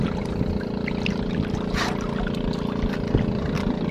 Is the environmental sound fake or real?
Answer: real